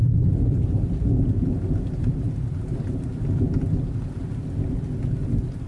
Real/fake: real